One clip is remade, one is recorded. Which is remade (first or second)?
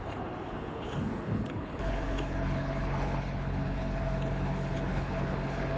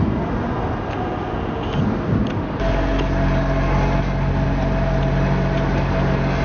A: first